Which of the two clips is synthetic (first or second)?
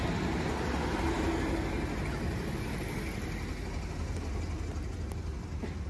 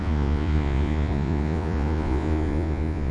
second